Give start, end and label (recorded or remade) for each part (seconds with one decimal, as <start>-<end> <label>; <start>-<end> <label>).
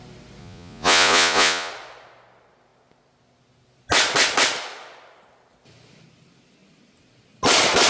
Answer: 0.0-0.4 recorded; 0.4-1.7 remade; 1.7-7.9 recorded